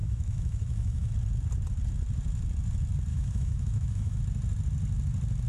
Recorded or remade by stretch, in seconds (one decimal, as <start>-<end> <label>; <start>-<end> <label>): 0.0-1.1 remade; 1.1-3.1 recorded; 3.1-4.2 remade; 4.2-5.5 recorded